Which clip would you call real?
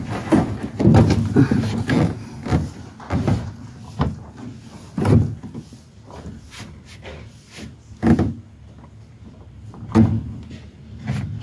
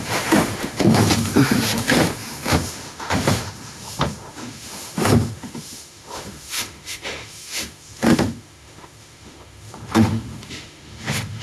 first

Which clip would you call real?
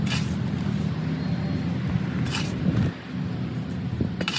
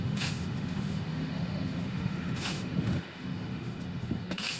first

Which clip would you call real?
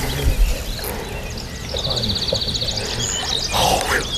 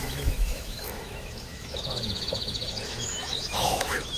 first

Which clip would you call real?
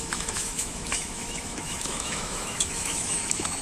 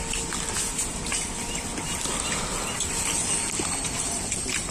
second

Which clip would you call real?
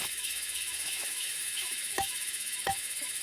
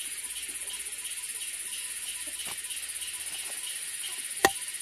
second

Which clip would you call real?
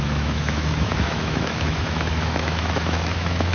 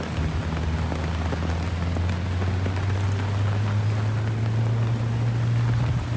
second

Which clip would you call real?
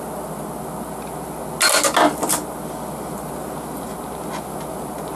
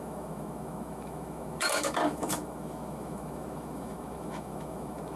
first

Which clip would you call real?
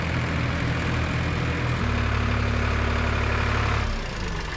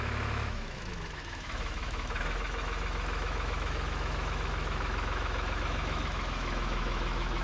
first